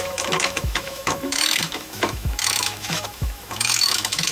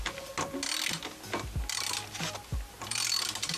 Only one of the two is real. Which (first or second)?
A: second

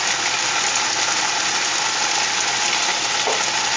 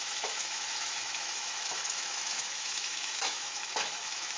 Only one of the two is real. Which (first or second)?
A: first